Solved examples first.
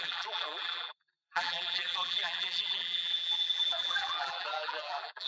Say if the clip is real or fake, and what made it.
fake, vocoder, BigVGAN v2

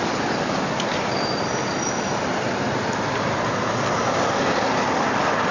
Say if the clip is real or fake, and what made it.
real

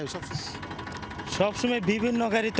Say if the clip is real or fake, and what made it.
real